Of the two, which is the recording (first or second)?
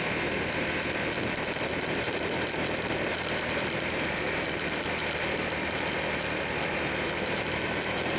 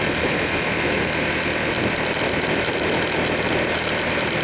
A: second